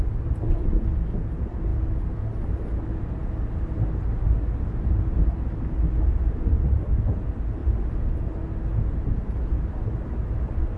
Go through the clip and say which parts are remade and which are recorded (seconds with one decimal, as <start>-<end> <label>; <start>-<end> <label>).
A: 0.0-10.8 recorded